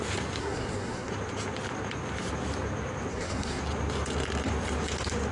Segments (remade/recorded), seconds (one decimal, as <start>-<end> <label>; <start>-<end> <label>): 0.0-0.4 recorded; 0.4-1.1 remade; 1.1-3.1 recorded; 3.1-3.6 remade; 3.6-5.3 recorded